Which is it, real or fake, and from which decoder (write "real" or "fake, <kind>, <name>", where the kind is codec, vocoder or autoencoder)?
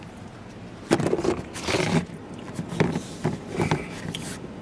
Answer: real